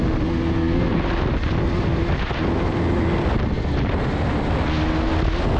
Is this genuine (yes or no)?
yes